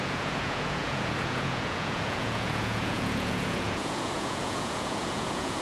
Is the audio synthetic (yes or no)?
yes